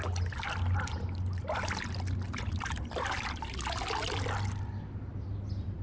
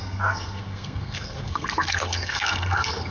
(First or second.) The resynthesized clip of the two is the second